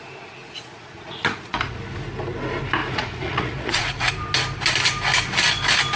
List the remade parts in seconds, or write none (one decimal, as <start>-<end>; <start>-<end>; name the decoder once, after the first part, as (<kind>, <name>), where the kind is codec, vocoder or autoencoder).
0.4-1.8 (vocoder, Vocos); 2.8-4.1